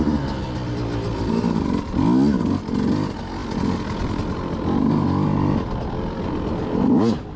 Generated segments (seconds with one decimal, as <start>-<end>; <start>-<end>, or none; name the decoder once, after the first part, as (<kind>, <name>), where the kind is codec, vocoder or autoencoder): none